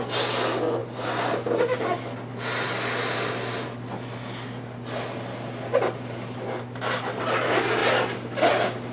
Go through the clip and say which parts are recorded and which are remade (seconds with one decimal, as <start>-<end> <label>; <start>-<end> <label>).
0.0-8.9 recorded